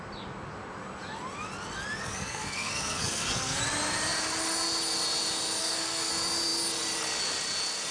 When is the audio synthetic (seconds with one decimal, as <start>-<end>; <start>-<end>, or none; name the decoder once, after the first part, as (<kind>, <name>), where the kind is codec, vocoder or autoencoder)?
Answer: 2.0-3.6 (codec, SNAC); 5.6-6.1